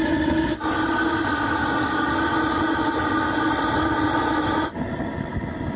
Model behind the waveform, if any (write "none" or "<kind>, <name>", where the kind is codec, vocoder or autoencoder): none